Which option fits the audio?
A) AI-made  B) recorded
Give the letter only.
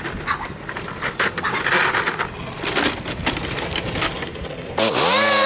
B